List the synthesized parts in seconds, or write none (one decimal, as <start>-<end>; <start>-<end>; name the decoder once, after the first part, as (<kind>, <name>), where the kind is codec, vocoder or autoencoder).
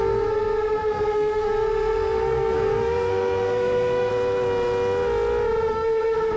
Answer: 0.0-4.1 (codec, SNAC); 5.7-6.4